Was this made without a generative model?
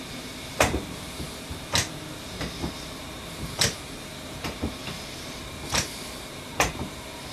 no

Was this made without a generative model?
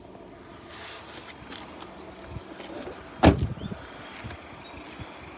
yes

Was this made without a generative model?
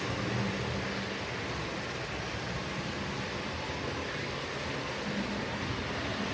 yes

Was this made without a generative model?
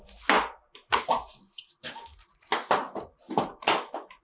yes